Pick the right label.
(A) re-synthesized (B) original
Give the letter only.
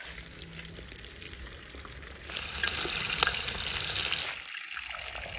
B